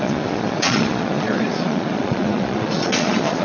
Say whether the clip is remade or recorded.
remade